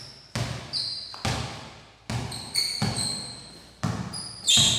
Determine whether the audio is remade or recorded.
recorded